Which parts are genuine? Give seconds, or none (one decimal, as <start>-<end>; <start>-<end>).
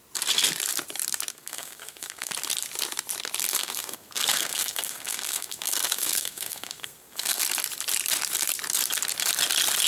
0.0-1.3; 2.3-3.5; 7.4-9.9